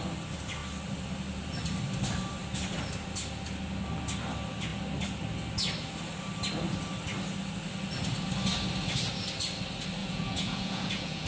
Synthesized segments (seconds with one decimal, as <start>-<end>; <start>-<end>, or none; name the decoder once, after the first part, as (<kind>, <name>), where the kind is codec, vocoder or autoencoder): 10.0-11.3 (vocoder, Vocos)